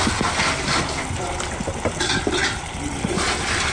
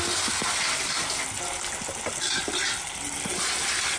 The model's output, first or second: first